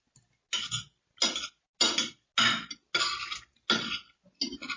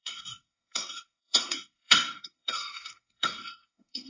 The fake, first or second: second